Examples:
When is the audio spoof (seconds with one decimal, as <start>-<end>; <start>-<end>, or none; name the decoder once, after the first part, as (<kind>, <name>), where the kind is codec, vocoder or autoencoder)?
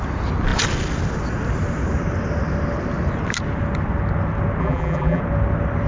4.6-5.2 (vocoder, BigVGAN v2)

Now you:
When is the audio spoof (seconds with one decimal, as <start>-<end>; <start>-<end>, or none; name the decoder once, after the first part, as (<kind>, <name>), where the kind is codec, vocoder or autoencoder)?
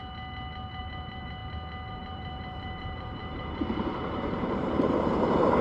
0.8-1.4 (vocoder, BigVGAN v2); 1.9-5.6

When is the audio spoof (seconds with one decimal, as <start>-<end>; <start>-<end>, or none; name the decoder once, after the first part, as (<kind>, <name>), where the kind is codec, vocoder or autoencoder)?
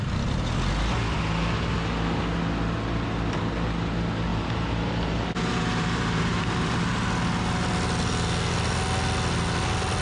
4.3-6.8 (vocoder, BigVGAN v2)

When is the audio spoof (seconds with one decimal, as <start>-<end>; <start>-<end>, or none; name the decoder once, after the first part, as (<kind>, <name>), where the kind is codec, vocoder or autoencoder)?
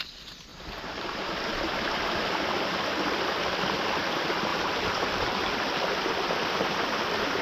0.5-1.3 (vocoder, BigVGAN v2); 4.5-5.1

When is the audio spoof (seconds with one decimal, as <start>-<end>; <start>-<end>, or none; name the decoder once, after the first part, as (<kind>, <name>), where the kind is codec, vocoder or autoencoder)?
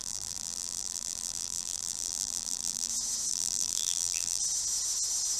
0.0-2.9 (vocoder, BigVGAN v2); 3.3-4.4